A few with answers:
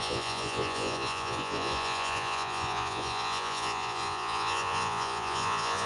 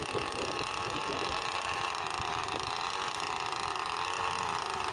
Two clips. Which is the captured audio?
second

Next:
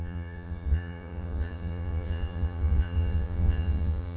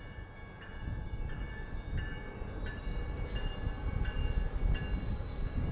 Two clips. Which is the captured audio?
second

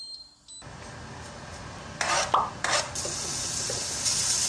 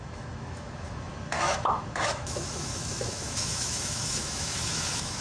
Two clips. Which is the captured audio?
first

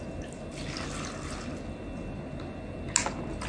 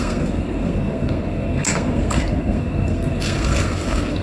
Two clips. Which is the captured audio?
first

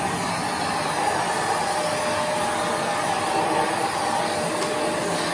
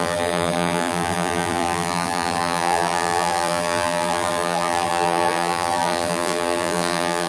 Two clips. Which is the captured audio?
first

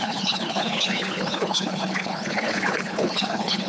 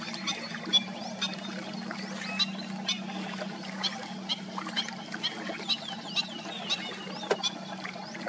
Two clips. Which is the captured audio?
second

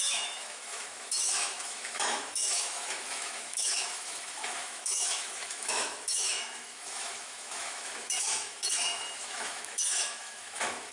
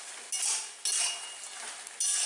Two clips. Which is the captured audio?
second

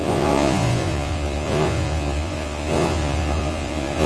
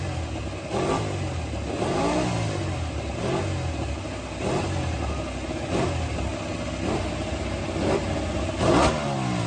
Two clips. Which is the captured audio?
second